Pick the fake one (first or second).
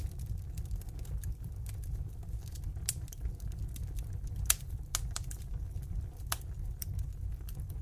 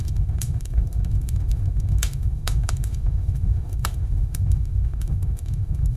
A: second